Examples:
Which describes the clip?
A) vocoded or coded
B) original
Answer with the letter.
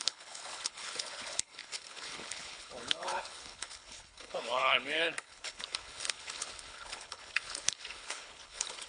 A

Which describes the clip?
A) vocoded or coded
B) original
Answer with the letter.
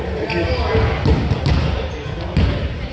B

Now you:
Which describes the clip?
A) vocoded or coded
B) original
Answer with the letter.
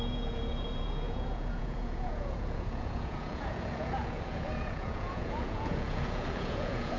A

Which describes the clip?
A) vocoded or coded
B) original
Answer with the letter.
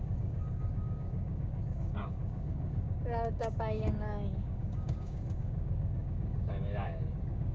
A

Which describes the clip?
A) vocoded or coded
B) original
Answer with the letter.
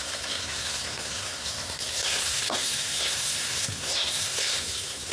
A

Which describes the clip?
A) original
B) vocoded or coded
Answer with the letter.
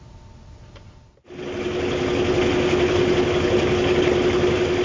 A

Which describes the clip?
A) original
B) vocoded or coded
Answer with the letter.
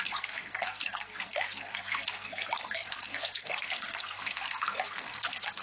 B